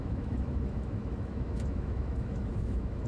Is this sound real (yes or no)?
no